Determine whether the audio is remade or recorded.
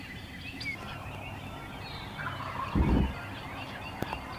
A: recorded